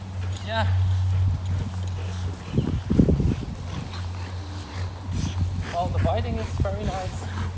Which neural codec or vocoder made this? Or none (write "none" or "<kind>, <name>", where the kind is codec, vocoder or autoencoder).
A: none